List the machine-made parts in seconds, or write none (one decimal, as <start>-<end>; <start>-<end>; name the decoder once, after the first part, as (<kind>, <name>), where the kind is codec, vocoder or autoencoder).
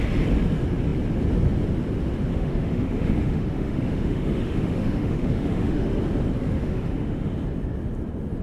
2.3-6.0 (autoencoder, DAC-VAE); 6.4-7.3